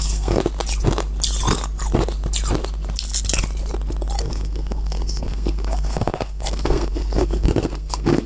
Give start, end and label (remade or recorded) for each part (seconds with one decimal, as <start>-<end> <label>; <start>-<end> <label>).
0.0-0.4 remade; 0.4-4.2 recorded; 4.2-8.3 remade